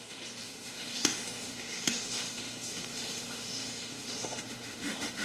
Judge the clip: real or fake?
fake